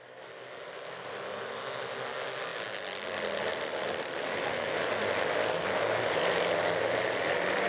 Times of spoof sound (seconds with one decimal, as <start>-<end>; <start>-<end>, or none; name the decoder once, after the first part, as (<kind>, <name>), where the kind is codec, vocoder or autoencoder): none